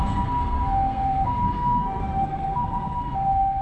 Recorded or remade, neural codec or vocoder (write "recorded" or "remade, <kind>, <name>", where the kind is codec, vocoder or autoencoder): remade, codec, SNAC